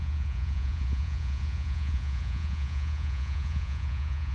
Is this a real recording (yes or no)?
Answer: no